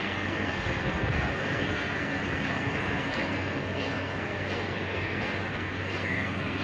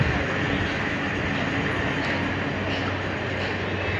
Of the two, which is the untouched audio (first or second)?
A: second